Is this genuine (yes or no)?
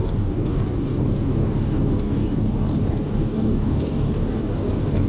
no